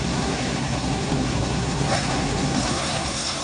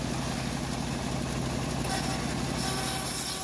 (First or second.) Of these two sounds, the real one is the second